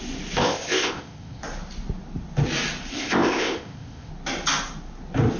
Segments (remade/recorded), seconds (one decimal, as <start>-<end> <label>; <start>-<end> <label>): 0.0-0.4 recorded; 0.4-1.4 remade; 1.4-2.9 recorded; 2.9-4.1 remade; 4.1-5.4 recorded